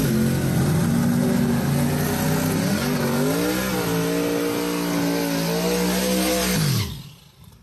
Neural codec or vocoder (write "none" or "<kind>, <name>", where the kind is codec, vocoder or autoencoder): none